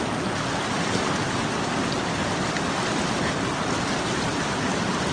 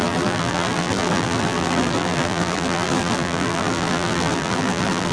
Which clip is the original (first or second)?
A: first